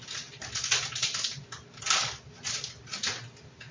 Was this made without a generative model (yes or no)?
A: yes